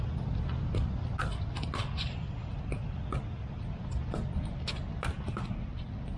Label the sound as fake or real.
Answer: real